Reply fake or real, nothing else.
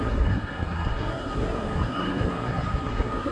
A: fake